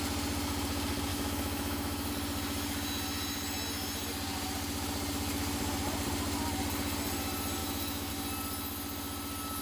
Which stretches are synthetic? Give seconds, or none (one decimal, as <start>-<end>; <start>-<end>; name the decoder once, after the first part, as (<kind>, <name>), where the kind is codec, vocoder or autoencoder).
1.1-2.1 (autoencoder, DAC-VAE); 7.6-8.1